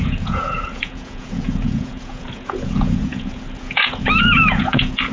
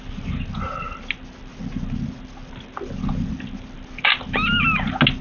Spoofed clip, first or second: first